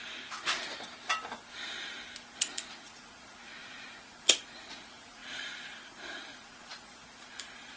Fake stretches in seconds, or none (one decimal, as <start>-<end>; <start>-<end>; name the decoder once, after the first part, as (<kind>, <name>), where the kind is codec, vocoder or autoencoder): 0.0-0.6 (vocoder, Vocos); 2.3-7.8